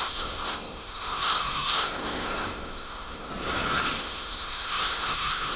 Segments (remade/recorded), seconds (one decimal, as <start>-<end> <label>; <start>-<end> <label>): 0.0-3.3 remade; 3.3-4.0 recorded; 4.0-5.6 remade